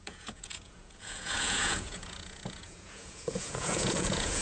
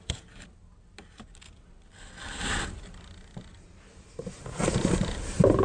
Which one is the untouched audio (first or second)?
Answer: second